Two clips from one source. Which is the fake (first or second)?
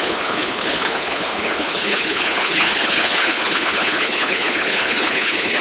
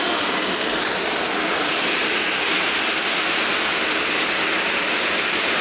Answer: first